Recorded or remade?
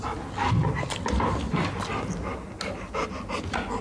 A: recorded